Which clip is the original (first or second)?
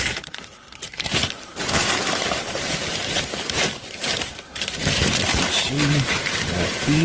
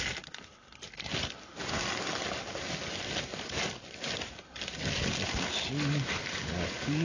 second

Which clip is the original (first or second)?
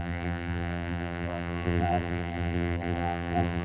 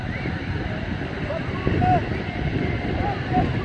second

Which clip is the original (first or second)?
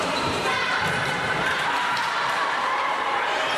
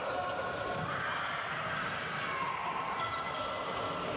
second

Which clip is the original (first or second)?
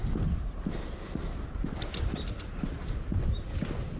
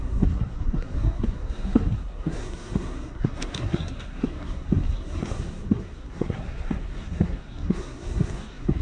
first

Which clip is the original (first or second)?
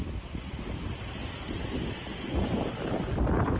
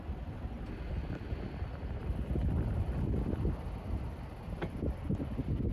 second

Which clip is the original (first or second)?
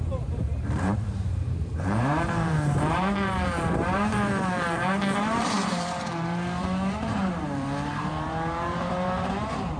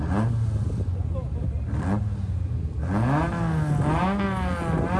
second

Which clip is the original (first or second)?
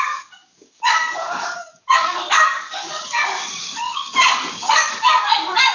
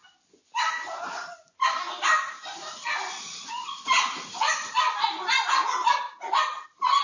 second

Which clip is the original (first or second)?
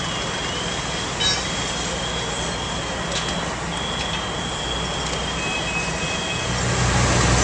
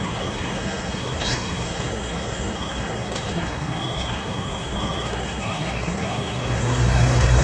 first